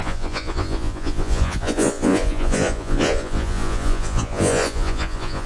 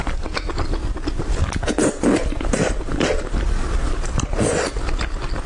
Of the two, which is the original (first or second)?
second